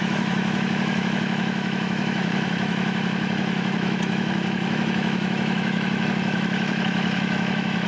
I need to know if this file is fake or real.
fake